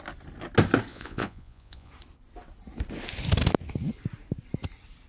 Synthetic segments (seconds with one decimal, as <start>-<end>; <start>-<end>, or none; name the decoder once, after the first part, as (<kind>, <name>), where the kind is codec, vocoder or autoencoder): 0.9-1.9 (vocoder, Vocos)